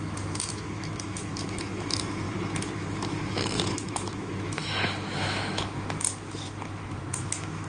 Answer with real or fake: fake